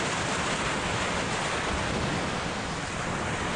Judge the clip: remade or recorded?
recorded